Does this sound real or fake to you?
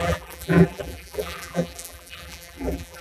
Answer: fake